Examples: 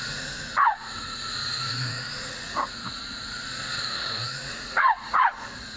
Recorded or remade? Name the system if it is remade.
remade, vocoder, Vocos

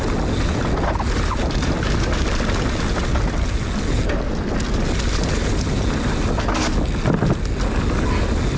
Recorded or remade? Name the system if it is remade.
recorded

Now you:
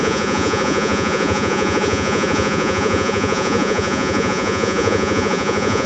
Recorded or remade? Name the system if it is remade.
remade, vocoder, Vocos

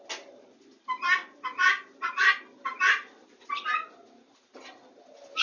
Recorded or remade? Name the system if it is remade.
recorded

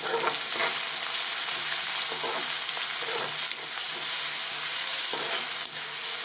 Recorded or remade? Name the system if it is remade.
recorded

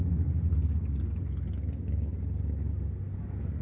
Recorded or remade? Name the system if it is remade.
recorded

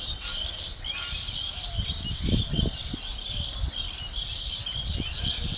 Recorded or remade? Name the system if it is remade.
recorded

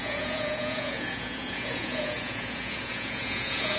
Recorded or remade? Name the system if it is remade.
remade, vocoder, Vocos